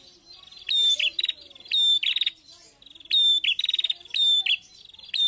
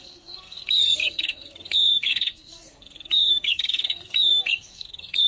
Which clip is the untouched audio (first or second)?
first